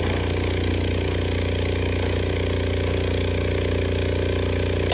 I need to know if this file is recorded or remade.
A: recorded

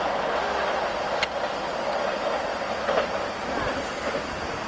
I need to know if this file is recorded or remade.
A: recorded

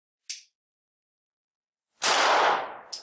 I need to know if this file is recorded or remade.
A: recorded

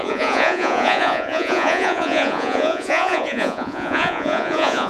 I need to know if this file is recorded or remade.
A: remade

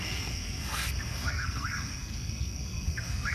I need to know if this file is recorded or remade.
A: remade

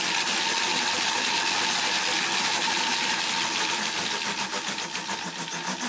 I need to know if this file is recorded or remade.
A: recorded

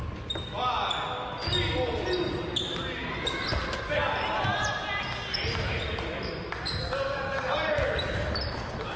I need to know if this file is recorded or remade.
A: recorded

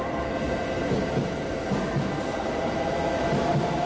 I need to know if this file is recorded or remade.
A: recorded